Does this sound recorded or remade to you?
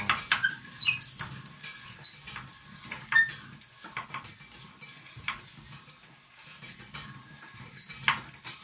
recorded